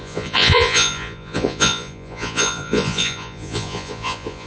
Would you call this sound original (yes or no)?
no